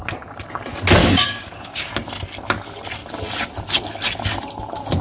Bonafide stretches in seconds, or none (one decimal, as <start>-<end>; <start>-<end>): 0.0-1.0; 1.9-5.0